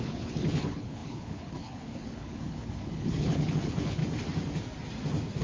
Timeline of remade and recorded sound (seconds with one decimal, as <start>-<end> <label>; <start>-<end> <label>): 0.0-4.0 remade; 4.0-5.4 recorded